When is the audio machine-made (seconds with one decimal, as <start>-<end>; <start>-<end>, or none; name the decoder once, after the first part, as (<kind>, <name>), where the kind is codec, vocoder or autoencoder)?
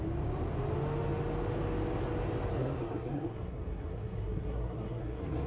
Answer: 2.5-5.5 (codec, SNAC)